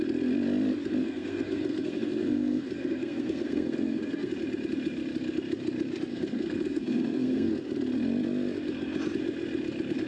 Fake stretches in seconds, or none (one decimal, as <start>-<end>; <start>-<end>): 1.0-4.3; 6.1-7.5